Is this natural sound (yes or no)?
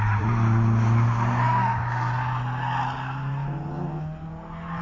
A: yes